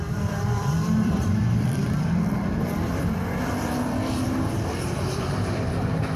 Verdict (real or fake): fake